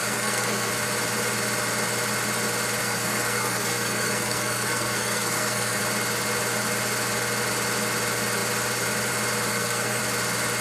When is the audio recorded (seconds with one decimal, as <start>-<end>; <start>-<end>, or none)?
0.7-2.8; 5.8-9.5; 10.0-10.6